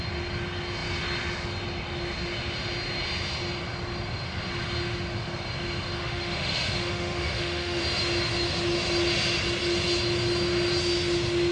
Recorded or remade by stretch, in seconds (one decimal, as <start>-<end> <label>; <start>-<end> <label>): 0.0-6.0 recorded; 6.0-7.8 remade; 7.8-11.5 recorded